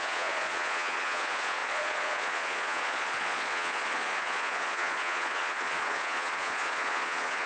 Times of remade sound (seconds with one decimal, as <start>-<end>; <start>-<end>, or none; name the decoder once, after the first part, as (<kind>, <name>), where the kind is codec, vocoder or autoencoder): 0.0-7.5 (vocoder, Vocos)